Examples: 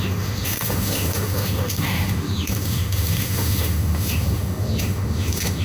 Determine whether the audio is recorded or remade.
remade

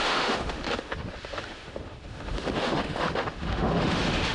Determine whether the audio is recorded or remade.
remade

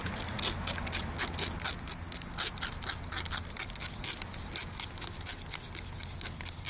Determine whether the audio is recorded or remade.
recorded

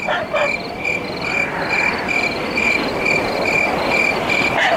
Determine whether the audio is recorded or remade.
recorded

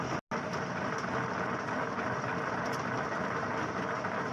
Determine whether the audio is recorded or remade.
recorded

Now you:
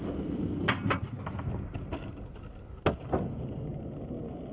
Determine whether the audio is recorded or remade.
recorded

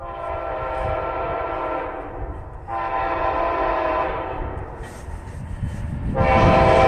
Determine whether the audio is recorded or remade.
recorded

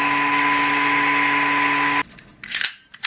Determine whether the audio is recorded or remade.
recorded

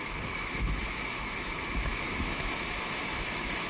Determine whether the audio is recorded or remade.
remade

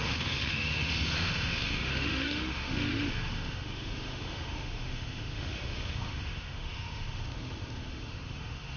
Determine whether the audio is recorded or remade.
remade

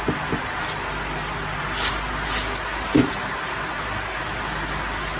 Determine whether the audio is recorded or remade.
recorded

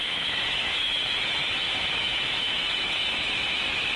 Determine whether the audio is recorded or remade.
remade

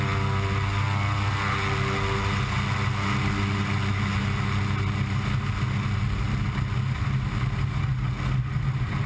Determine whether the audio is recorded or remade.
recorded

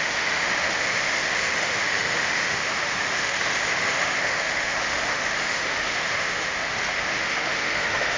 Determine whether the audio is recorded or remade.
remade